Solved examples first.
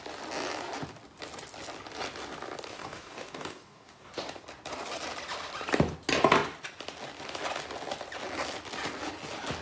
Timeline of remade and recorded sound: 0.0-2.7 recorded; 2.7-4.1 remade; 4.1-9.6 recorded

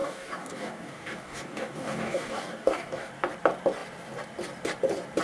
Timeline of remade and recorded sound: 0.0-3.1 remade; 3.1-5.2 recorded

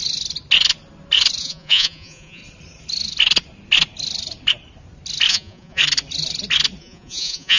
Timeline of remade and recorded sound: 0.0-1.4 recorded; 1.4-2.4 remade; 2.4-5.3 recorded; 5.3-5.8 remade; 5.8-6.8 recorded; 6.8-7.6 remade

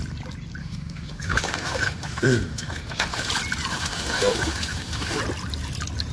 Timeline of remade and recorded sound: 0.0-0.6 recorded; 0.6-3.3 remade; 3.3-3.7 recorded; 3.7-5.2 remade; 5.2-6.1 recorded

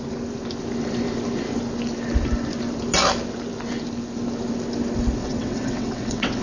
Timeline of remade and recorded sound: 0.0-5.2 recorded; 5.2-6.4 remade

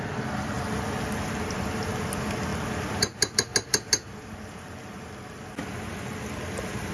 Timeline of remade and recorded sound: 0.0-6.9 recorded

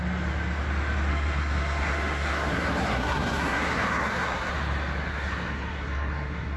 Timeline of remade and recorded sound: 0.0-1.1 recorded; 1.1-4.5 remade; 4.5-5.1 recorded; 5.1-6.6 remade